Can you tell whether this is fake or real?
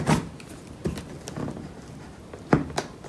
real